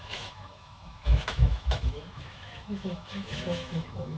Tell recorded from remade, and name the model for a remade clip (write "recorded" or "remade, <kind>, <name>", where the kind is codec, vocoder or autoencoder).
remade, autoencoder, DAC-VAE